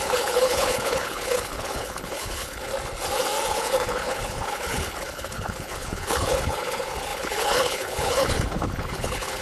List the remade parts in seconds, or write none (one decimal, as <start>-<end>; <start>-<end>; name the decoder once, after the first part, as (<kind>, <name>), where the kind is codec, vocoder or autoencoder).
0.0-2.7 (codec, HILCodec); 3.5-9.4

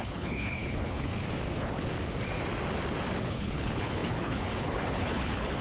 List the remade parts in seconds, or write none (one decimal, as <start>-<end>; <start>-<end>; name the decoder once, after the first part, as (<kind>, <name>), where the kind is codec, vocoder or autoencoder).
0.0-1.1 (codec, HILCodec); 3.2-5.6

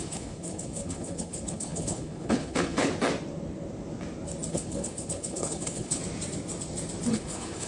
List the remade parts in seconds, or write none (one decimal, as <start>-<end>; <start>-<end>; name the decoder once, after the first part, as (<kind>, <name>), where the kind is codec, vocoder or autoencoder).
0.0-2.9 (codec, HILCodec); 4.5-6.0; 7.1-7.7

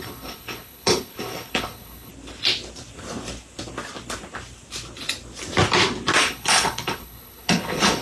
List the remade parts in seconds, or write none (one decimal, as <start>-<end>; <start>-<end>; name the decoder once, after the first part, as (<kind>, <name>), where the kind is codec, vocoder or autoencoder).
0.0-2.1 (codec, HILCodec); 6.2-8.0

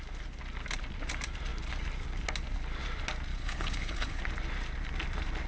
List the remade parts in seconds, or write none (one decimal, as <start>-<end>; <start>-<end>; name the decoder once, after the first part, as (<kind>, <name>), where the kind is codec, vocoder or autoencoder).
3.3-4.2 (codec, HILCodec)

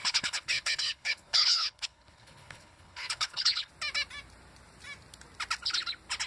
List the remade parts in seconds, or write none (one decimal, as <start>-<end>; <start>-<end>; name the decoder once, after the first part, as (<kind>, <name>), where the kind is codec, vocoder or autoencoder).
0.0-3.7 (codec, HILCodec)

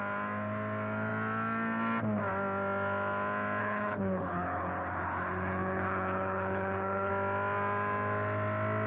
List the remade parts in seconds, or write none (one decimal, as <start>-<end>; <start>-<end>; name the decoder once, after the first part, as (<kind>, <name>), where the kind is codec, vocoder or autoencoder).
3.6-7.1 (codec, HILCodec)